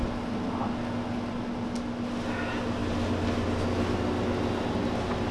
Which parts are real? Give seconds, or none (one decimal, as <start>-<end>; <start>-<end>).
0.0-5.3